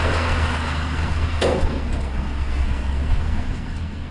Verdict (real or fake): fake